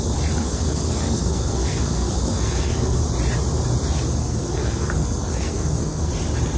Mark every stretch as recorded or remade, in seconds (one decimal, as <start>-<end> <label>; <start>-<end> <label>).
0.0-0.4 recorded; 0.4-3.0 remade; 3.0-4.2 recorded; 4.2-6.1 remade; 6.1-6.6 recorded